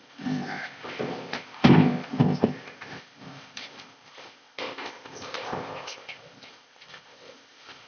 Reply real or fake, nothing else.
fake